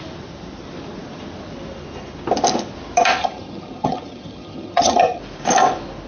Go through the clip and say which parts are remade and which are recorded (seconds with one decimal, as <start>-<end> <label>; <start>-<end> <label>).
0.0-3.2 recorded; 3.2-5.2 remade; 5.2-6.1 recorded